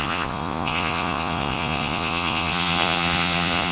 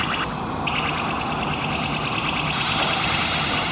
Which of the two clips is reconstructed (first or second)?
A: first